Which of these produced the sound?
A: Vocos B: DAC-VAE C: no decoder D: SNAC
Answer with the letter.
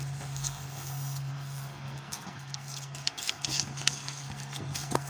D